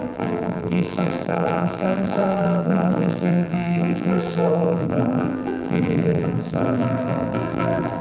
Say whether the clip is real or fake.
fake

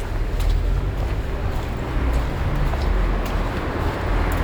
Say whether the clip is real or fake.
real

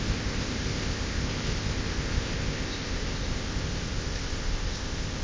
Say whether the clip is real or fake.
fake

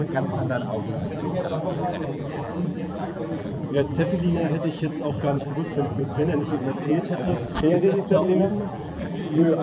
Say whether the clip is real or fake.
fake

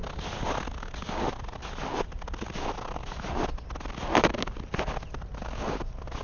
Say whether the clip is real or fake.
real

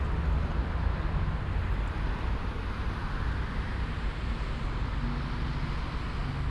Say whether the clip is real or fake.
real